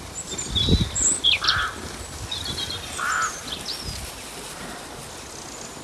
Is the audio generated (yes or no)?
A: no